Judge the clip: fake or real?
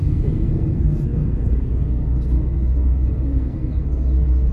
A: fake